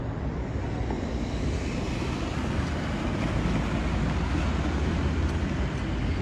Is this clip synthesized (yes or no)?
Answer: no